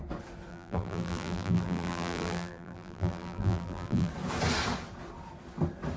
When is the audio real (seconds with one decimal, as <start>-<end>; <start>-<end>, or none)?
0.0-0.5; 4.1-6.0